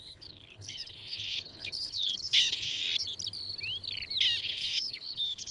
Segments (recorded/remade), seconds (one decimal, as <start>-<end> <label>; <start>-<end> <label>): 0.0-2.8 remade; 2.8-4.4 recorded; 4.4-5.5 remade